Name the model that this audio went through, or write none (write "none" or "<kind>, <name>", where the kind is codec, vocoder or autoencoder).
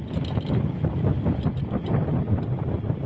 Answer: none